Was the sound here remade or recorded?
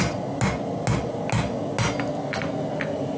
recorded